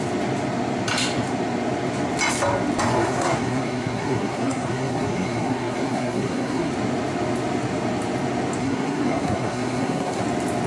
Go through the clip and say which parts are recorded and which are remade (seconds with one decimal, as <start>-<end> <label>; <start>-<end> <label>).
0.0-2.9 recorded; 2.9-6.7 remade; 6.7-8.6 recorded; 8.6-10.2 remade; 10.2-10.7 recorded